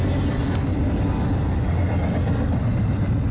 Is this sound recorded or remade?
recorded